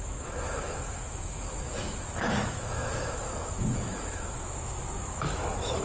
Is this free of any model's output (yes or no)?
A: no